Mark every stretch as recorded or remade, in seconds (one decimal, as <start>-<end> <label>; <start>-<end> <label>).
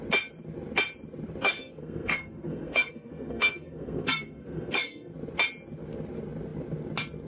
0.0-1.4 recorded; 1.4-5.1 remade; 5.1-7.3 recorded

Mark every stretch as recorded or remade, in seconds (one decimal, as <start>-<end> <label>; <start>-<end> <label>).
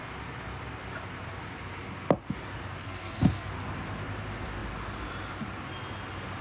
0.0-2.8 recorded; 2.8-3.5 remade; 3.5-6.4 recorded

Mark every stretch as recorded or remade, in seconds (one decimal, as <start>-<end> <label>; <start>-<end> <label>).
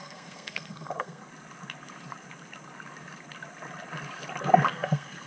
0.0-1.2 remade; 1.2-4.4 recorded; 4.4-5.3 remade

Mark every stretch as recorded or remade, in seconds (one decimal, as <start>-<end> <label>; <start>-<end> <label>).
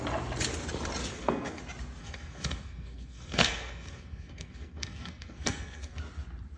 0.0-1.1 recorded; 1.1-1.6 remade; 1.6-2.0 recorded; 2.0-6.0 remade; 6.0-6.6 recorded